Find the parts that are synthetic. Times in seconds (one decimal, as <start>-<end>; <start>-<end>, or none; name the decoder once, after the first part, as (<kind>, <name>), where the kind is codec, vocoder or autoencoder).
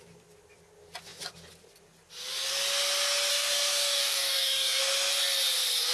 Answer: 3.3-4.8 (codec, DAC)